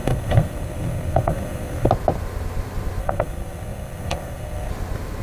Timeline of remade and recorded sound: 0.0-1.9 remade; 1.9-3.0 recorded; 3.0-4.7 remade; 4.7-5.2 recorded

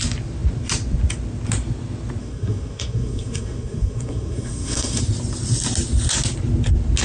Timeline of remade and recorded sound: 0.0-2.2 recorded; 2.2-5.0 remade; 5.0-7.0 recorded

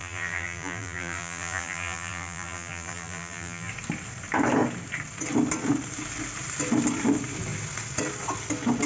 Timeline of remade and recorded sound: 0.0-3.7 remade; 3.7-8.9 recorded

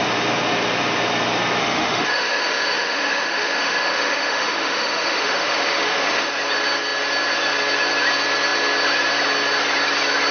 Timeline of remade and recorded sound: 0.0-1.6 recorded; 1.6-6.3 remade; 6.3-10.3 recorded

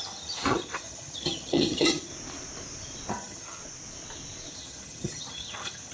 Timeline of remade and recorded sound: 0.0-2.1 remade; 2.1-3.1 recorded; 3.1-3.6 remade; 3.6-4.5 recorded; 4.5-5.9 remade

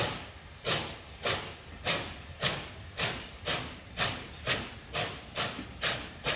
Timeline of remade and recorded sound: 0.0-6.4 recorded